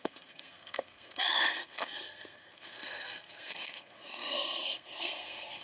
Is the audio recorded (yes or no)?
no